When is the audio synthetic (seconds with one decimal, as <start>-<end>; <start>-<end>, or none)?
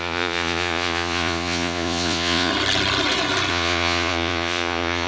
0.0-2.5; 3.5-5.1